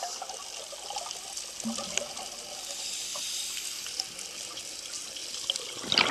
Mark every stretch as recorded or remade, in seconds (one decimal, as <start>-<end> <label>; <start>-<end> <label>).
0.0-6.1 recorded

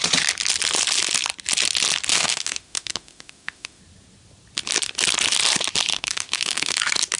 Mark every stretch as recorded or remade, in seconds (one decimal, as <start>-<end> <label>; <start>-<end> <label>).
0.0-2.1 recorded; 2.1-3.8 remade; 3.8-5.9 recorded; 5.9-6.8 remade; 6.8-7.2 recorded